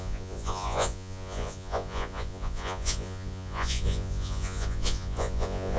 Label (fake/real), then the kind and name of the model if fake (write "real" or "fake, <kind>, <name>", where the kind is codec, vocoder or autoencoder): fake, vocoder, Vocos